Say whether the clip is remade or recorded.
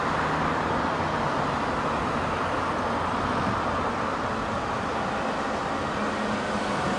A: recorded